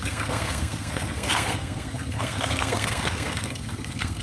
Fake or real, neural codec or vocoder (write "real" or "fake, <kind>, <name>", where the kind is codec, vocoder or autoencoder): fake, codec, SNAC